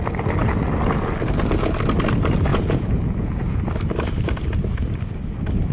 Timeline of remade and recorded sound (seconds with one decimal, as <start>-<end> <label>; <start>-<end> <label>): 0.0-2.5 recorded; 2.5-3.6 remade; 3.6-5.7 recorded